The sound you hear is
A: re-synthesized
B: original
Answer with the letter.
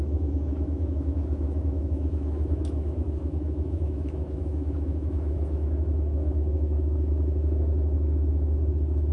A